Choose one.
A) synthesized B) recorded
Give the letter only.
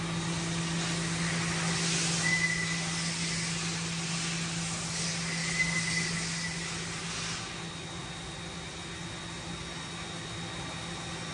B